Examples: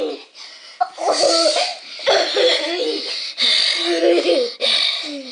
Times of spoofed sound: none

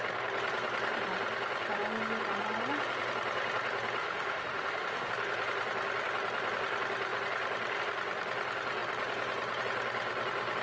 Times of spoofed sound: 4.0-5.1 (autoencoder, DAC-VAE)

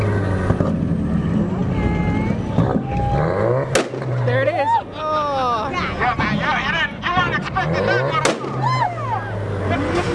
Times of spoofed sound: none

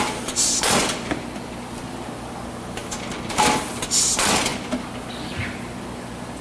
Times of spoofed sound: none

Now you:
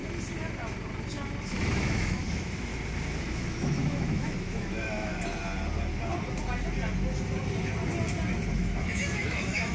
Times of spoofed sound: 1.5-2.7 (autoencoder, DAC-VAE); 3.2-5.1; 8.5-9.7